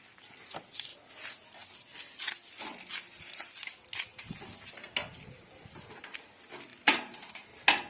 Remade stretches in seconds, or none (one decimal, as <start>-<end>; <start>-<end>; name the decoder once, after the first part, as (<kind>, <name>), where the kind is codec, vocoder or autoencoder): 4.1-4.7 (vocoder, BigVGAN v2); 6.7-7.3